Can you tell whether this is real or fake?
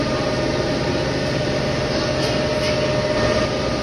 real